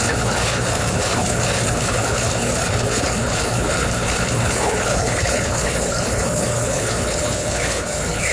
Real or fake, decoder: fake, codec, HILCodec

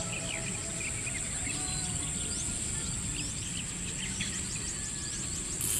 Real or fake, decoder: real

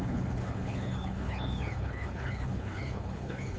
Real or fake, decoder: fake, codec, HILCodec